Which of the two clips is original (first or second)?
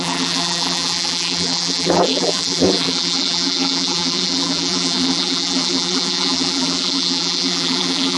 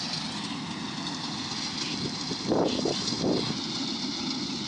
second